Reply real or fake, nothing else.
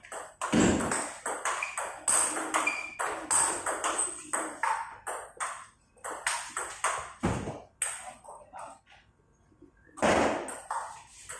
real